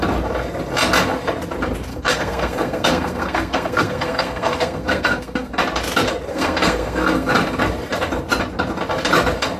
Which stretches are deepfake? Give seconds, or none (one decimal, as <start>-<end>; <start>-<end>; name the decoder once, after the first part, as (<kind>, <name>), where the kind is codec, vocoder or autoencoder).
1.9-5.5 (codec, SNAC); 6.3-7.3